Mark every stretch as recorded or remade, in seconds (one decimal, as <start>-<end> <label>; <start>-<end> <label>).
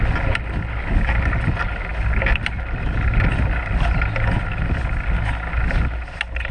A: 0.0-6.5 recorded